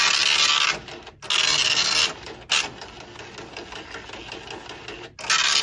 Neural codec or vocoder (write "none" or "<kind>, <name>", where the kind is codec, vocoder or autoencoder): none